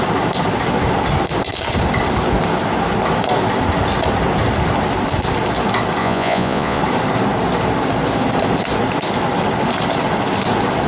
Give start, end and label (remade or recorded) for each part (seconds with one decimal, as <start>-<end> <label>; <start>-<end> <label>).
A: 0.0-6.0 recorded; 6.0-6.8 remade; 6.8-10.9 recorded